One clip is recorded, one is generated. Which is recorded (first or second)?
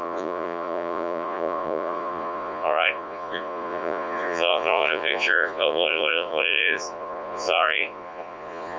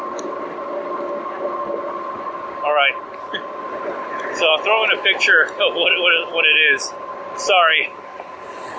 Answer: second